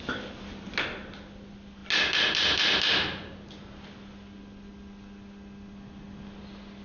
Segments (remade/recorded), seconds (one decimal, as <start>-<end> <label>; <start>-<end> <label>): 0.0-6.8 recorded

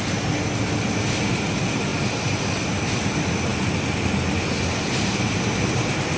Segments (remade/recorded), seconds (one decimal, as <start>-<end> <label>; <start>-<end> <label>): 0.0-6.2 recorded

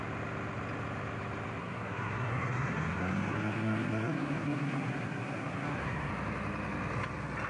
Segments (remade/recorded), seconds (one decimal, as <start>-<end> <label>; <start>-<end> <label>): 0.0-1.6 recorded; 1.6-6.1 remade; 6.1-7.5 recorded